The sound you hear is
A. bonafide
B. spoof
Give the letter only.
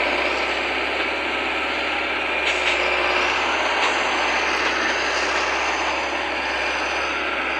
A